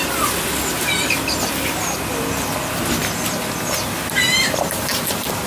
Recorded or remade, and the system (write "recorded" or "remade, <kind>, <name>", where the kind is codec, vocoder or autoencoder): recorded